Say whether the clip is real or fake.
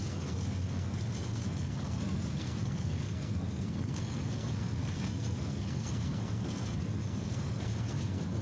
fake